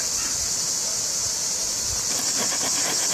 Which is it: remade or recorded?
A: recorded